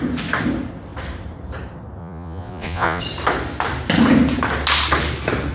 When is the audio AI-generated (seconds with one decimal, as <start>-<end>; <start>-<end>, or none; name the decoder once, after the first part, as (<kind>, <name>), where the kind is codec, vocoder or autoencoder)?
2.0-3.0 (vocoder, Vocos)